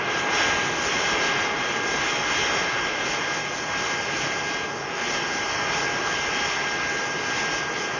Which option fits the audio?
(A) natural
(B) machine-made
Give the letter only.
A